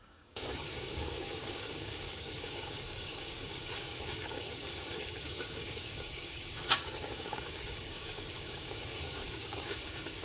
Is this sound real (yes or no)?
no